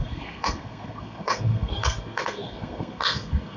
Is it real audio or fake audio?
fake